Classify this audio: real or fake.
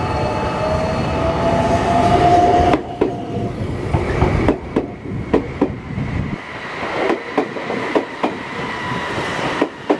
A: real